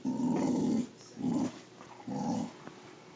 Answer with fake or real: real